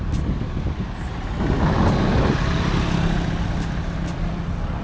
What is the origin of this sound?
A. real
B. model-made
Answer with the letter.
A